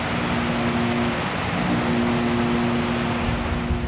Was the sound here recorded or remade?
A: recorded